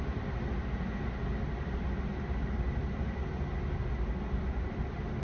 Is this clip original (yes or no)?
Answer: yes